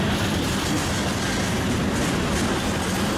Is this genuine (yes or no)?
yes